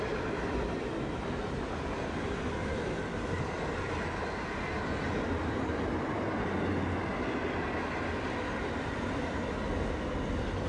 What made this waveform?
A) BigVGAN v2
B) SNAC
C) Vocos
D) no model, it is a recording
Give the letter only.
D